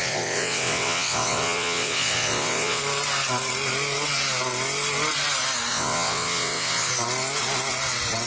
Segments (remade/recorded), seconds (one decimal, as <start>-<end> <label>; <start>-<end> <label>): 0.0-2.8 remade; 2.8-5.7 recorded; 5.7-6.9 remade; 6.9-8.3 recorded